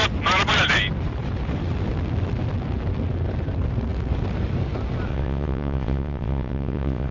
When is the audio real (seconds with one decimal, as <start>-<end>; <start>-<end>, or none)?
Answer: 0.0-5.1